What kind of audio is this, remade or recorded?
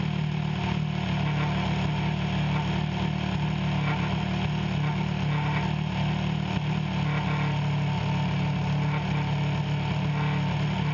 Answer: recorded